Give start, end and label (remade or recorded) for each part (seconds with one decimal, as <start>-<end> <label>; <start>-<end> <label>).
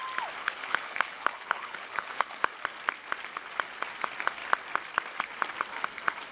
0.0-0.4 recorded; 0.4-2.6 remade; 2.6-6.3 recorded